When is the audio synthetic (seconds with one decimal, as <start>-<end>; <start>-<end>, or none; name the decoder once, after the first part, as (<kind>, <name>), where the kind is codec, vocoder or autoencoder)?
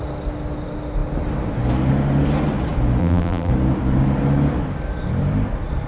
3.0-3.5 (vocoder, BigVGAN v2)